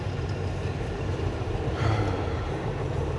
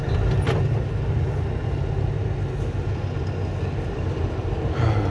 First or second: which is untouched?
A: second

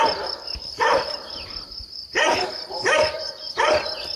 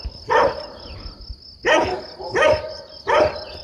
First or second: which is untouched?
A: second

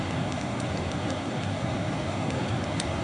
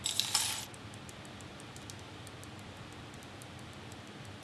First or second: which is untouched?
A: second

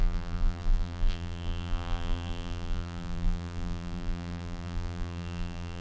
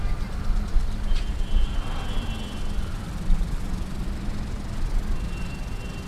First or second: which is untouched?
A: second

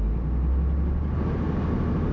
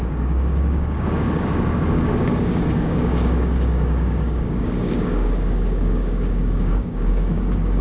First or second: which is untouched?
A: first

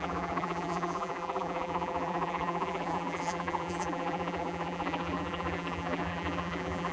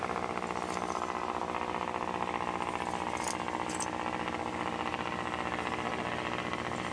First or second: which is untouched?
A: second